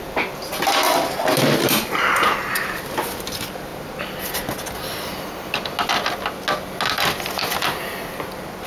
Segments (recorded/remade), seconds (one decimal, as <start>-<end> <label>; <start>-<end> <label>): 0.0-8.7 recorded